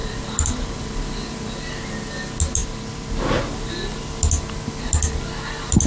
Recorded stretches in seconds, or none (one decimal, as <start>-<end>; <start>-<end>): 0.7-2.6; 3.2-5.9